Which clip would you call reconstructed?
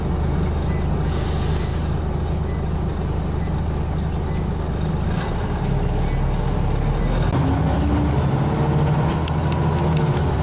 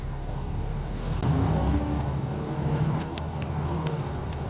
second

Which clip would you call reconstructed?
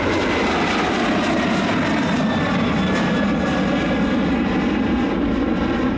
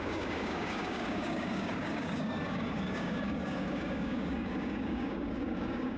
second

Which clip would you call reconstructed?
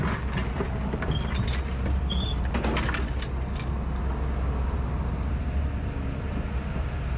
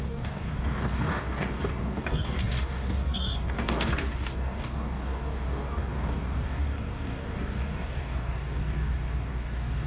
second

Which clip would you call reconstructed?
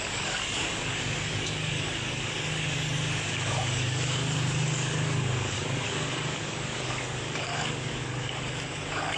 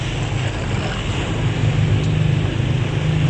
first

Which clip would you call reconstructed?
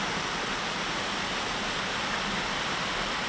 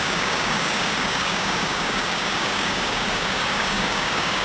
second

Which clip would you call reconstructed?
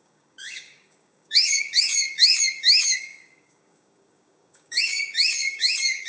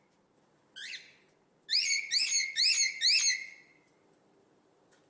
first